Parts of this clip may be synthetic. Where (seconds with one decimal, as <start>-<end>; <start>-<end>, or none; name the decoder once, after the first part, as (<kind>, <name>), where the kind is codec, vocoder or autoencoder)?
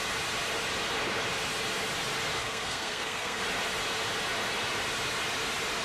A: 2.4-3.4 (codec, SNAC)